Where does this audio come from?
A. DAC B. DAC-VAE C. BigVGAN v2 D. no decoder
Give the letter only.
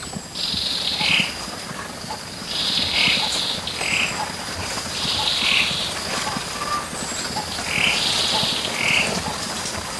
D